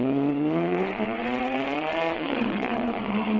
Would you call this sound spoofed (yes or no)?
yes